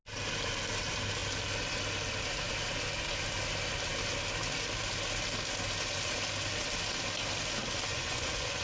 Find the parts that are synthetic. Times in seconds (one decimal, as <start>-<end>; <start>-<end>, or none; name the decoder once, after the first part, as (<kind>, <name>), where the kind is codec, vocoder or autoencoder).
7.9-8.6 (vocoder, Vocos)

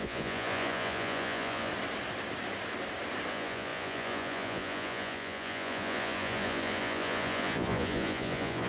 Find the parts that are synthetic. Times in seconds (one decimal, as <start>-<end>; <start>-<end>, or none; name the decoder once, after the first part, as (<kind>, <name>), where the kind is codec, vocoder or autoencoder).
0.0-1.7 (vocoder, Vocos); 3.3-8.7